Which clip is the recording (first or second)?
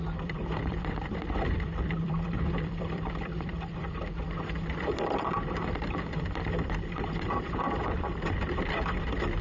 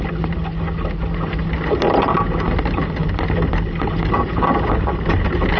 second